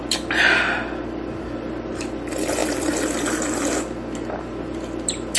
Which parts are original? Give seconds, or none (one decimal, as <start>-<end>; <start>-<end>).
2.6-4.4